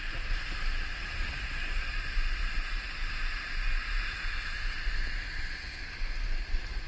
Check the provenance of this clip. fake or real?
real